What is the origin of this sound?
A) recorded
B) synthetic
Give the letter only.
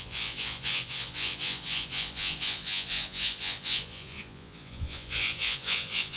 B